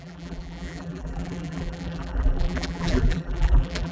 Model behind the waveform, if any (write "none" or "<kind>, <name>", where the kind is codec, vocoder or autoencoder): vocoder, BigVGAN v2